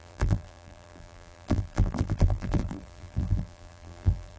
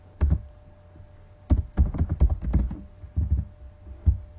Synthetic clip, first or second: first